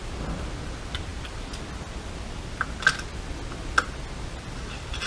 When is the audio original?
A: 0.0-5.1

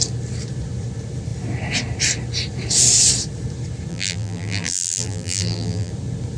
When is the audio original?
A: 0.0-3.9; 5.9-6.4

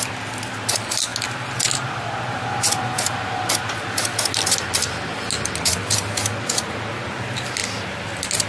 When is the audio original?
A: 0.0-8.5

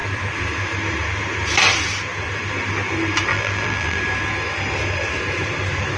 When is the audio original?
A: 0.0-3.3; 4.0-6.0

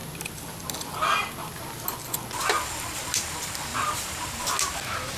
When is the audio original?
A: 0.0-3.7; 4.4-5.2

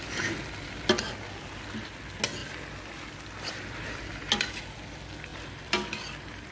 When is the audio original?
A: 0.0-5.3

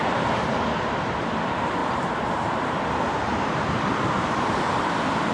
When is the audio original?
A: 0.0-1.8; 4.6-5.3

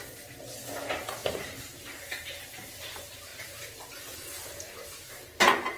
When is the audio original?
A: 0.0-1.2; 2.3-3.3; 4.0-5.8